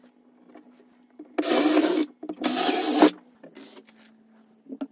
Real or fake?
real